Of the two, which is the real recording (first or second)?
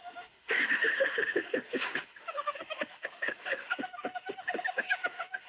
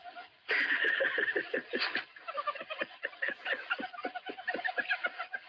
second